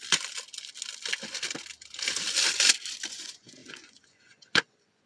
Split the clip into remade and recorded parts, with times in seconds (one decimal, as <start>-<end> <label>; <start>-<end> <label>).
0.0-3.1 recorded; 3.1-5.1 remade